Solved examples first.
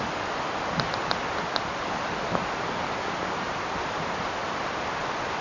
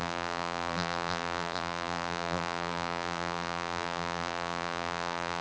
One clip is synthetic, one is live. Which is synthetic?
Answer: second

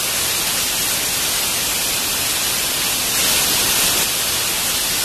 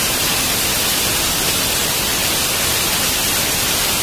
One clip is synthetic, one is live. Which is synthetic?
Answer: second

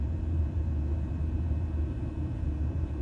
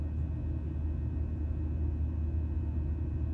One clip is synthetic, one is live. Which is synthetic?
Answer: first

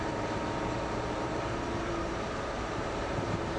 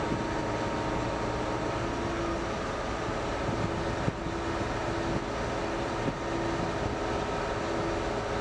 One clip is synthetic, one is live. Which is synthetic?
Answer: first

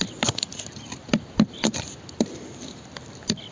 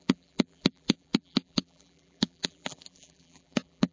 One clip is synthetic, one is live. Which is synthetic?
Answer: second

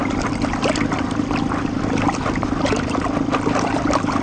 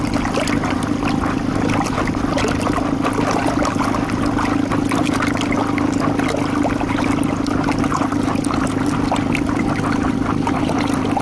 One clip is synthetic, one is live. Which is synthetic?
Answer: first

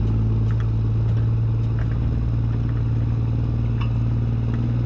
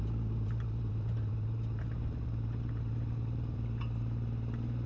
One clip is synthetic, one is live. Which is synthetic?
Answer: second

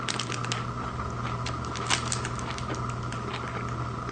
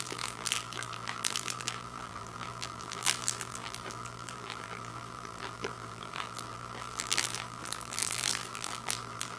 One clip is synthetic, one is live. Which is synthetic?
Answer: second